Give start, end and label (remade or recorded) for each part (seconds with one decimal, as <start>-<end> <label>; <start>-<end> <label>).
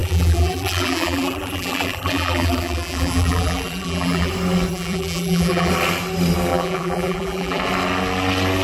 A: 0.0-4.3 remade; 4.3-4.7 recorded; 4.7-5.7 remade; 5.7-6.5 recorded; 6.5-7.6 remade; 7.6-8.6 recorded